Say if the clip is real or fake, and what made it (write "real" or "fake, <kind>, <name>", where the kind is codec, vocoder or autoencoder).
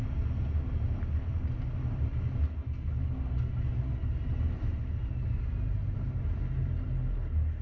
real